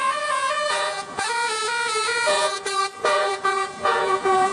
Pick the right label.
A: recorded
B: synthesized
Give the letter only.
B